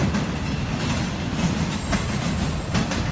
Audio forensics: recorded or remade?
recorded